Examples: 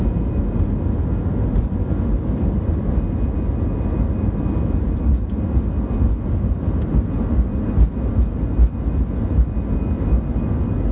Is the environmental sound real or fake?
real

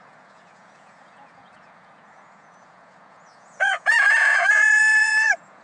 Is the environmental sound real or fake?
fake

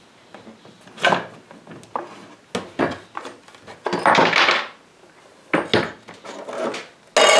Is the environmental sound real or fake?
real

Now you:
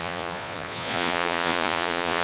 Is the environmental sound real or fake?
fake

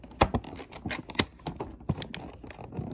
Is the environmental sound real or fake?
real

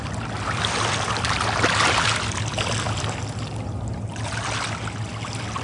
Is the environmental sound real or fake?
real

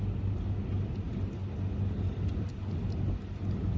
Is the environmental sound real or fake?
real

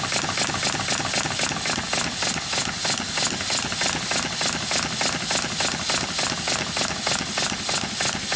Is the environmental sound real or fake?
real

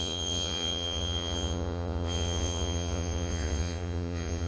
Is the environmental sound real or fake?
fake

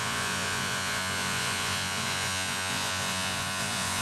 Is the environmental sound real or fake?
fake